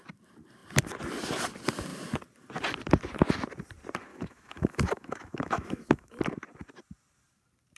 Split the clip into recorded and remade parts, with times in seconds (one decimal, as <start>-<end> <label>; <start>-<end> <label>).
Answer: 0.0-4.1 recorded; 4.1-6.2 remade; 6.2-7.8 recorded